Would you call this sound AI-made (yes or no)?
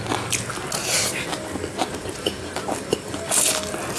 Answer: no